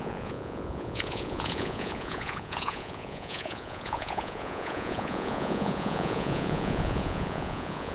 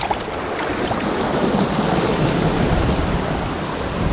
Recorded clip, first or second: second